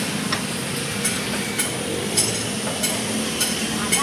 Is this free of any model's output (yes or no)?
yes